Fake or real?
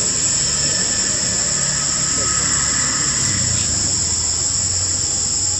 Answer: real